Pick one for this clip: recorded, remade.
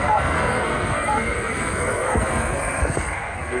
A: remade